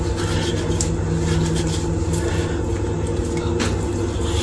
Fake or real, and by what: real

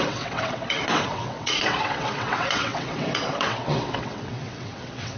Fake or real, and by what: fake, vocoder, WaveNeXt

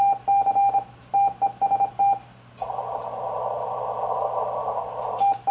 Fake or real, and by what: real